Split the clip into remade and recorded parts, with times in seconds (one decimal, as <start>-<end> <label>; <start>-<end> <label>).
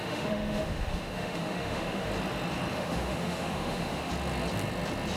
0.0-2.1 remade; 2.1-2.7 recorded; 2.7-4.1 remade; 4.1-5.2 recorded